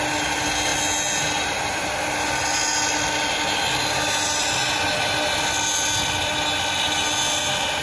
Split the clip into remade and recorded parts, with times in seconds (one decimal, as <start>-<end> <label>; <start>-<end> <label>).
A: 0.0-7.8 recorded